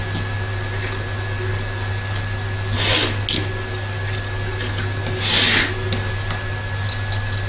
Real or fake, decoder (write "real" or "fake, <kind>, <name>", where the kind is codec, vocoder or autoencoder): real